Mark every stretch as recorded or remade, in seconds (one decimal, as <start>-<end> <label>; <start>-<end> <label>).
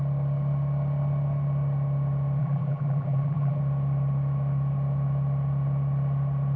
0.0-2.4 recorded; 2.4-3.6 remade; 3.6-6.6 recorded